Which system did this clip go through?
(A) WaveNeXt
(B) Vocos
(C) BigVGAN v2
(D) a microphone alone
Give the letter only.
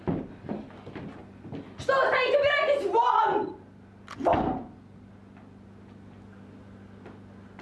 D